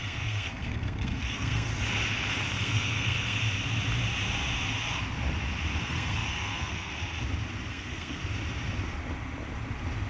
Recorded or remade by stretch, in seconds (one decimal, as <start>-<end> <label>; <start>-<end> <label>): 0.0-1.7 remade; 1.7-2.6 recorded; 2.6-3.4 remade; 3.4-5.8 recorded; 5.8-6.9 remade; 6.9-7.7 recorded; 7.7-8.2 remade; 8.2-10.1 recorded